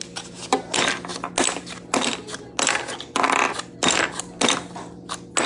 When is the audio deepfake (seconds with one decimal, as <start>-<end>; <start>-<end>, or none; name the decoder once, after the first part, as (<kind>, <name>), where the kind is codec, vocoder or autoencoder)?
none